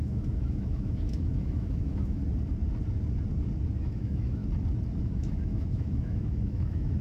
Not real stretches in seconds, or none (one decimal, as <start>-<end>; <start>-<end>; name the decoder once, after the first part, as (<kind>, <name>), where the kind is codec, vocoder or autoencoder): 0.0-2.2 (autoencoder, DAC-VAE); 3.8-4.4; 5.0-7.0